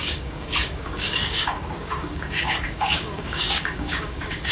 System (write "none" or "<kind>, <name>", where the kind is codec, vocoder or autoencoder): codec, DAC